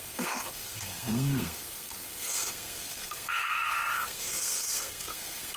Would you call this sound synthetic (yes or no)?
yes